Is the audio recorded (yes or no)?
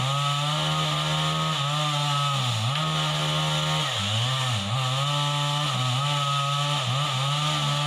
yes